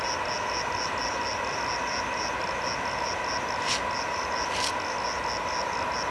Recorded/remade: recorded